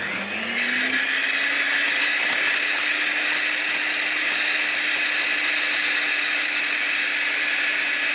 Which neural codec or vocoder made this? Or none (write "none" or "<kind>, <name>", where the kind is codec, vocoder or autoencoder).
none